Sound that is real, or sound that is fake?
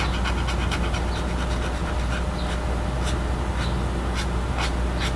real